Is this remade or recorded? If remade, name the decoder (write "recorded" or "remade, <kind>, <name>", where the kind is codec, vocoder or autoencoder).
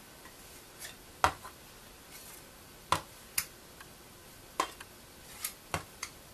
recorded